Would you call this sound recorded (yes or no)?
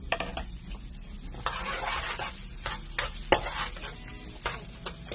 yes